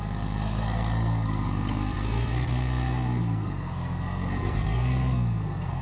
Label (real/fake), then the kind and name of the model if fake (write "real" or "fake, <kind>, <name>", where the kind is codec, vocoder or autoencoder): fake, codec, SNAC